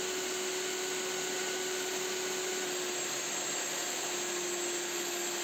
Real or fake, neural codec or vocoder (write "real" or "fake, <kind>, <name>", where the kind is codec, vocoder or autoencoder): real